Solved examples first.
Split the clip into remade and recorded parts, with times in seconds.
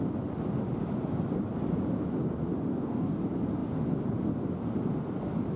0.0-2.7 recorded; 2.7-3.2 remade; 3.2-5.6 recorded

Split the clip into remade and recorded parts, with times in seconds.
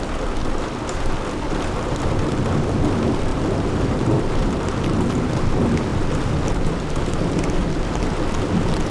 0.0-3.3 recorded; 3.3-5.3 remade; 5.3-8.9 recorded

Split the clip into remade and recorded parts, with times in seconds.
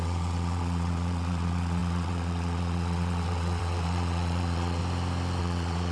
0.0-4.8 remade; 4.8-5.4 recorded; 5.4-5.9 remade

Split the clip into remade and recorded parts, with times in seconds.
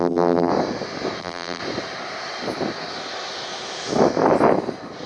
0.0-0.5 remade; 0.5-1.2 recorded; 1.2-1.6 remade; 1.6-5.1 recorded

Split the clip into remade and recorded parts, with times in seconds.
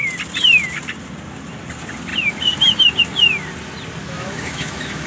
0.0-4.0 recorded; 4.0-5.1 remade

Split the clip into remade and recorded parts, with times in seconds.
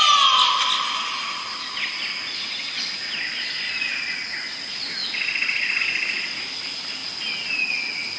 0.0-8.2 recorded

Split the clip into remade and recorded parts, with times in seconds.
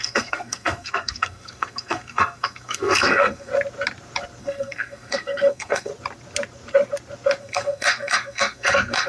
0.0-3.5 remade; 3.5-4.4 recorded; 4.4-5.9 remade; 5.9-7.4 recorded; 7.4-9.1 remade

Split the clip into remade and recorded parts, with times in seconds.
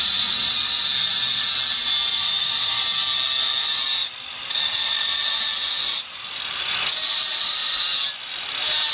0.0-2.1 recorded; 2.1-2.7 remade; 2.7-8.9 recorded